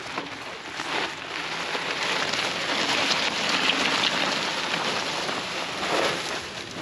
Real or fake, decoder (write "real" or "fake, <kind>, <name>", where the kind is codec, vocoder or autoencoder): real